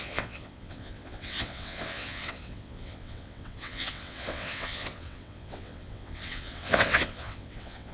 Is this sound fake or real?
fake